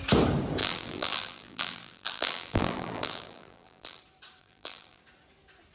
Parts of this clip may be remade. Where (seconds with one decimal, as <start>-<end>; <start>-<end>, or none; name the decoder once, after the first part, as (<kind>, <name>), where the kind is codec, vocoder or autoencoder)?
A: 0.6-4.0 (vocoder, BigVGAN v2); 4.4-5.0